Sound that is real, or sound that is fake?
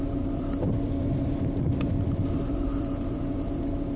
fake